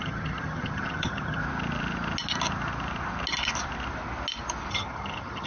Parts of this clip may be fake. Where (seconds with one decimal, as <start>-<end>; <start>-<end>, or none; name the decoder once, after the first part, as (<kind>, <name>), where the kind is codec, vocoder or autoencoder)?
0.0-1.4 (vocoder, HiFi-GAN); 4.7-5.5